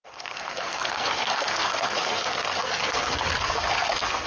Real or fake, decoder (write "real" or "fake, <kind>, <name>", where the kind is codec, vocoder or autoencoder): fake, codec, SNAC